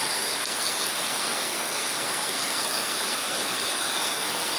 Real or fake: fake